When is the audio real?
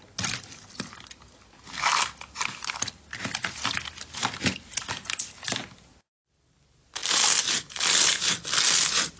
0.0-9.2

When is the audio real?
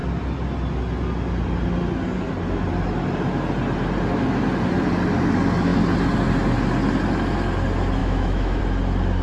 0.0-8.0; 8.6-9.2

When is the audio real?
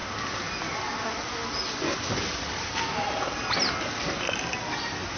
0.0-5.2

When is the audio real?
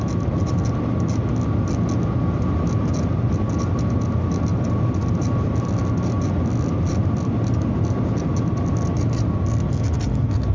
0.0-10.5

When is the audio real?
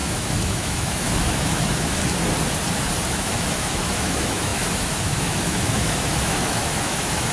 2.0-3.1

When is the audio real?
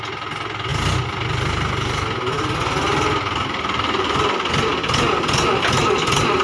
0.0-6.4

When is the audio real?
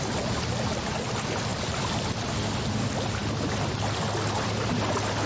0.0-5.3